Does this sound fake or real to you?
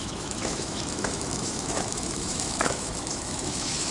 fake